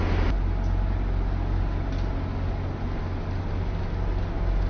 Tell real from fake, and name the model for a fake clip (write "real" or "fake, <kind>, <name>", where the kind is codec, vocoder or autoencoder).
real